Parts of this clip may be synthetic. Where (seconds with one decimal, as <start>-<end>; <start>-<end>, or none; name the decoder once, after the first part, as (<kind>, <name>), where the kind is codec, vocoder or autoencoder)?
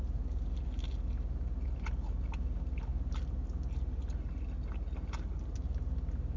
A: none